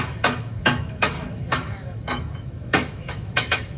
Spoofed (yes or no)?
yes